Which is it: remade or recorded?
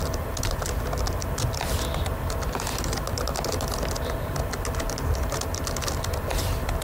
recorded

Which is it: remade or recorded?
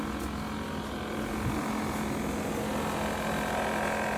recorded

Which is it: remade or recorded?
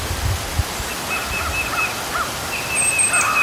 recorded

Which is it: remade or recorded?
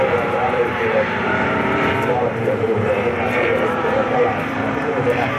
remade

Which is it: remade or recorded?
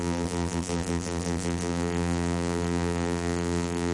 remade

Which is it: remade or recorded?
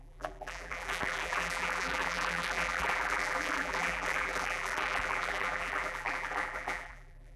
remade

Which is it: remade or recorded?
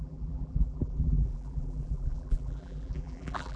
remade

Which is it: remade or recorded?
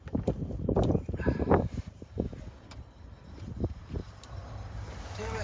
remade